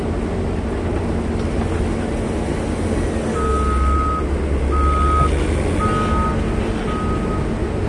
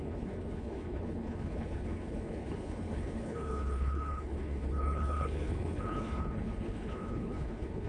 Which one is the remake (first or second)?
second